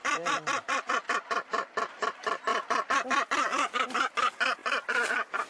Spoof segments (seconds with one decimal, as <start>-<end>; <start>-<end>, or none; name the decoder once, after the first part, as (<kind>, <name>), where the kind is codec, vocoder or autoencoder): 0.0-0.9 (vocoder, BigVGAN v2); 4.6-5.5